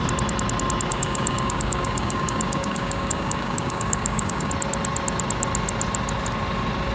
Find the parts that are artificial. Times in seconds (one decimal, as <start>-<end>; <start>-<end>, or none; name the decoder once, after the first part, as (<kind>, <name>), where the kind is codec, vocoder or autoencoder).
0.9-4.5 (codec, DAC)